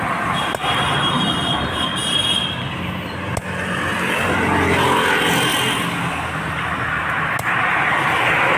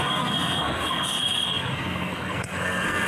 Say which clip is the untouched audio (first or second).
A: first